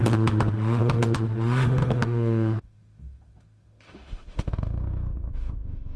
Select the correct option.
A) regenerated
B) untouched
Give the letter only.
A